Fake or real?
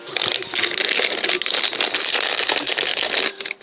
real